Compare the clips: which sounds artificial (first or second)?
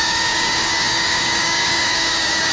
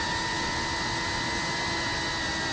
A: first